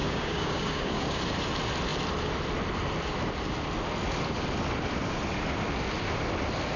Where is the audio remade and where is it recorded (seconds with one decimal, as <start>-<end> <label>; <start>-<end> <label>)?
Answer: 0.0-1.2 remade; 1.2-6.8 recorded